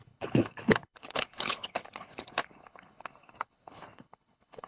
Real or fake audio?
fake